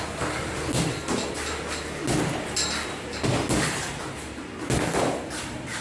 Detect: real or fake real